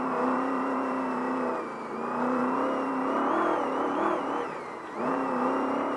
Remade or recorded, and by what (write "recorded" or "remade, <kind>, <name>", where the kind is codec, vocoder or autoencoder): remade, vocoder, BigVGAN v2